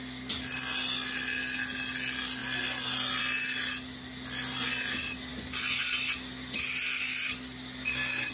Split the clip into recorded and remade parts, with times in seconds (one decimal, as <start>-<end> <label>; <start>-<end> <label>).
0.0-8.3 recorded

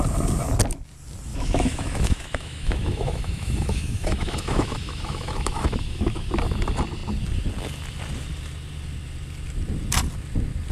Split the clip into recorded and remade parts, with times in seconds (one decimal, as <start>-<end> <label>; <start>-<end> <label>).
0.0-1.3 recorded; 1.3-6.3 remade; 6.3-10.7 recorded

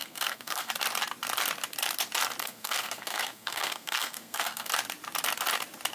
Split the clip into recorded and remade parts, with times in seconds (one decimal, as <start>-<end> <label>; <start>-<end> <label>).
0.0-0.7 remade; 0.7-2.4 recorded; 2.4-4.7 remade; 4.7-5.9 recorded

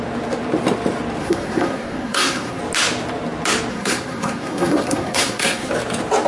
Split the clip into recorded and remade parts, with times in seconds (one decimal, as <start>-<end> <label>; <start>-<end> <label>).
0.0-1.2 recorded; 1.2-2.6 remade; 2.6-3.7 recorded; 3.7-5.7 remade; 5.7-6.3 recorded

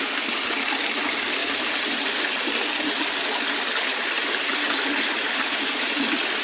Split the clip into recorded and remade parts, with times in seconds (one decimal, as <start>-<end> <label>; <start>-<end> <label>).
0.0-1.4 recorded; 1.4-2.9 remade; 2.9-3.9 recorded; 3.9-5.9 remade; 5.9-6.4 recorded